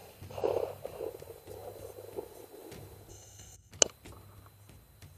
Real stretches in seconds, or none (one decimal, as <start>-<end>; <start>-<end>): 0.0-3.1; 3.7-5.2